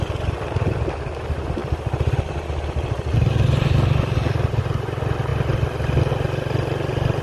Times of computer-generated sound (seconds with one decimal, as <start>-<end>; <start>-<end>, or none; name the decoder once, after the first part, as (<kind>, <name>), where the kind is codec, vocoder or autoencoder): none